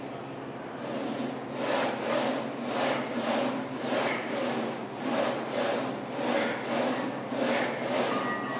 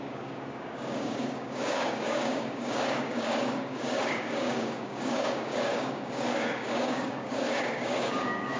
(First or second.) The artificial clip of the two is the second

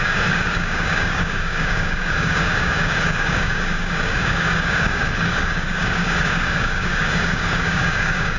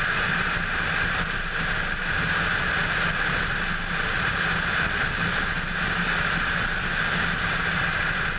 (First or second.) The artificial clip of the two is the first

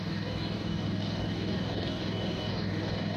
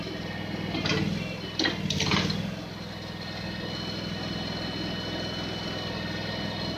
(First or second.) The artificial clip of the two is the first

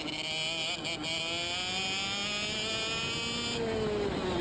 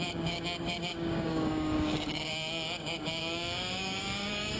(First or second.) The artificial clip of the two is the second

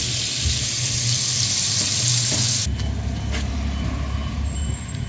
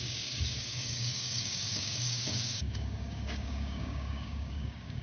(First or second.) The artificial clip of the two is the second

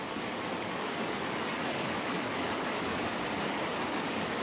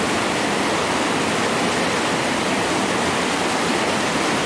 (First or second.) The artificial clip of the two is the first